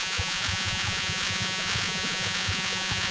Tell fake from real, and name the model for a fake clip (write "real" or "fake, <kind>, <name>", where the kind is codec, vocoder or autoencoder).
fake, vocoder, Vocos